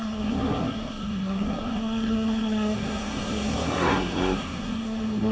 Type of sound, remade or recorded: remade